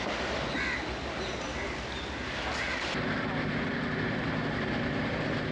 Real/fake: real